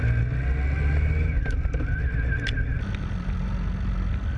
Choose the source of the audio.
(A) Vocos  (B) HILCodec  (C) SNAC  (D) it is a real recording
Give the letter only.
D